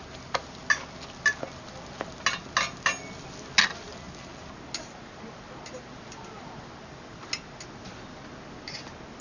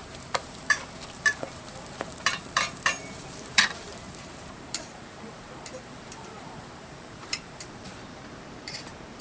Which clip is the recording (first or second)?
first